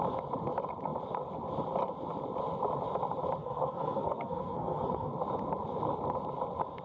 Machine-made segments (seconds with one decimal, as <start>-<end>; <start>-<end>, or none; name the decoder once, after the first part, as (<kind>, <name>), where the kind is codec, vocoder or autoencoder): 3.4-5.1 (codec, SNAC)